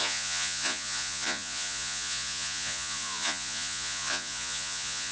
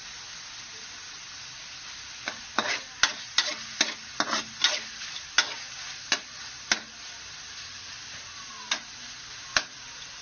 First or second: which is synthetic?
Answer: first